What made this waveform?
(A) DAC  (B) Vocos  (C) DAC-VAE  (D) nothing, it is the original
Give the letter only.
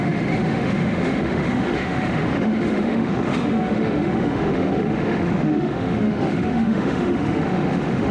C